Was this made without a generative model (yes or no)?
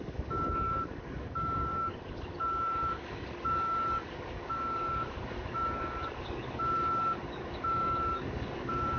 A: no